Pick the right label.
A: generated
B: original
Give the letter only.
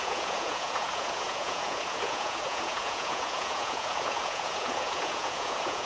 A